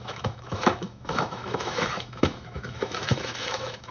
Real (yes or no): no